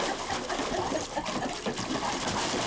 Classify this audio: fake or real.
real